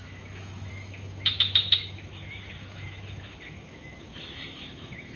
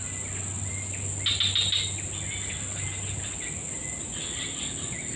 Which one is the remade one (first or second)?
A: first